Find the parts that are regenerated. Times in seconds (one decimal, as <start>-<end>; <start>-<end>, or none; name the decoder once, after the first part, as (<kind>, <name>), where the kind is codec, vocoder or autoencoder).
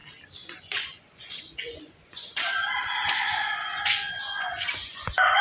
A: 0.6-5.4 (vocoder, Vocos)